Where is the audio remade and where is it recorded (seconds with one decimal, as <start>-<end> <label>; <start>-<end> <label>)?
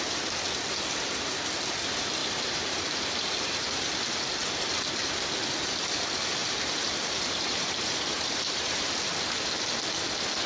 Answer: 0.0-2.2 recorded; 2.2-3.9 remade; 3.9-6.4 recorded; 6.4-8.9 remade; 8.9-10.5 recorded